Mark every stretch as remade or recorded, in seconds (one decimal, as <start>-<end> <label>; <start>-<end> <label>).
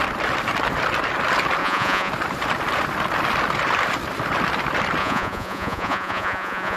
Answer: 0.0-1.6 recorded; 1.6-2.1 remade; 2.1-5.0 recorded; 5.0-6.8 remade